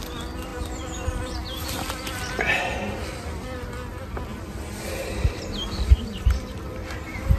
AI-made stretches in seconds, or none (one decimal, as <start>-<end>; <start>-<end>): 4.3-6.5